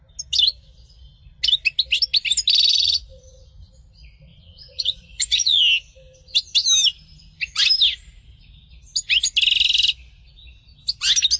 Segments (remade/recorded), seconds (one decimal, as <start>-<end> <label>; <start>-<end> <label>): 0.0-2.7 recorded; 2.7-3.7 remade; 3.7-4.3 recorded; 4.3-5.6 remade; 5.6-11.4 recorded